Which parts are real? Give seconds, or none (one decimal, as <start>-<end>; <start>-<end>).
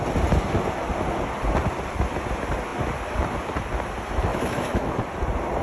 0.0-4.3; 5.0-5.6